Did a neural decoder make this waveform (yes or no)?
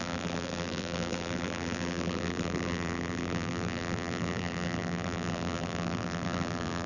yes